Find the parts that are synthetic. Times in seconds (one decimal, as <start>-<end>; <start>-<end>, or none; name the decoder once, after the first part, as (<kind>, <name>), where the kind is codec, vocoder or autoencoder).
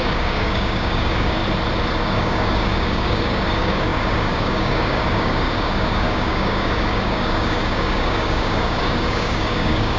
0.0-1.4 (codec, DAC); 2.0-10.0